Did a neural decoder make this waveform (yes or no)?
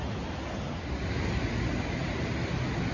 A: no